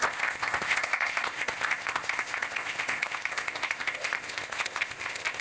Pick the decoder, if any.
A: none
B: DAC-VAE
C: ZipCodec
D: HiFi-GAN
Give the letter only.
C